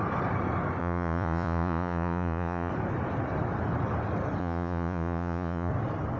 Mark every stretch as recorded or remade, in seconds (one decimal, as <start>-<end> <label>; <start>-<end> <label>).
0.0-0.8 recorded; 0.8-2.7 remade; 2.7-4.4 recorded; 4.4-5.7 remade; 5.7-6.2 recorded